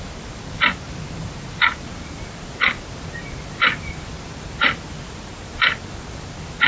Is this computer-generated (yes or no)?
no